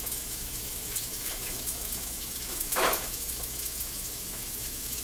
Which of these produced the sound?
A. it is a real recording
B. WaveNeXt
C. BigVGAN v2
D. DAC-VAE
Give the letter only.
D